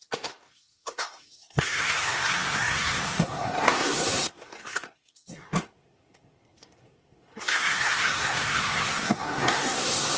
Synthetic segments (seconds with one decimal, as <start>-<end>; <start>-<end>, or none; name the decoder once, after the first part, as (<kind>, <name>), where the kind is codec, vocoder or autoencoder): 0.0-10.2 (codec, SNAC)